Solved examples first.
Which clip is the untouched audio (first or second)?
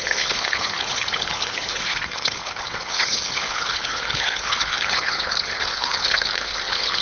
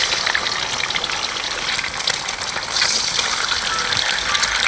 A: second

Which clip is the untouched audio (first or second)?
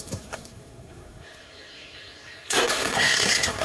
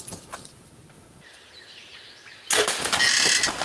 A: second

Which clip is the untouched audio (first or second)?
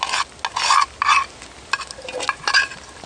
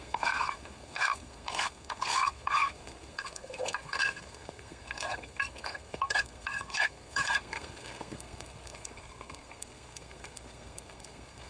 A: first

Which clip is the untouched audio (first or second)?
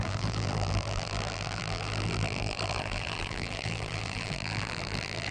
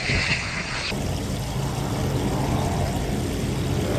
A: second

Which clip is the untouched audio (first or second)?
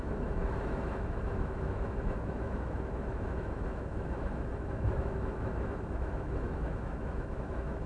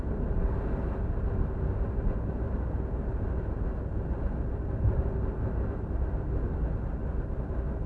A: second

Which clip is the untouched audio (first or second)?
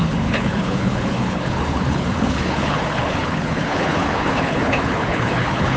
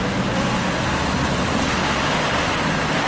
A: second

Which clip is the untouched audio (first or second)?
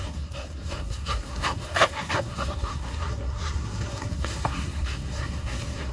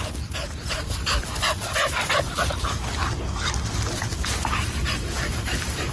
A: second